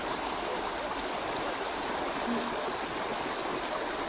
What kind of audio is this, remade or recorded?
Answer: recorded